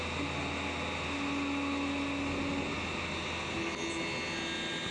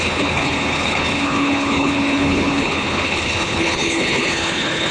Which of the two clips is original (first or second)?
first